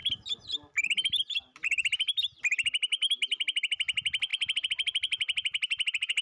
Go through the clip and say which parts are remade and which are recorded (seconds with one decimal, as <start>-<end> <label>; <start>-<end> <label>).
0.0-6.2 recorded